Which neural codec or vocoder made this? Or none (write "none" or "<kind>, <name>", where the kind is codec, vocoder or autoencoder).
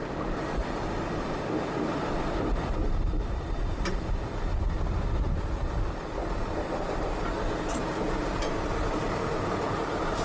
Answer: vocoder, BigVGAN v2